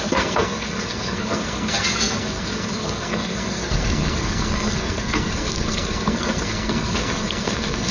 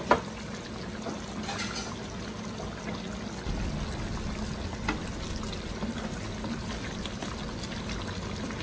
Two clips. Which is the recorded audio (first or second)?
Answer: second